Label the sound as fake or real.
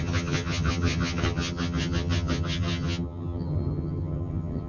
fake